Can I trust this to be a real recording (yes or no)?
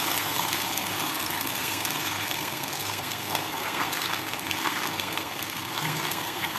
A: no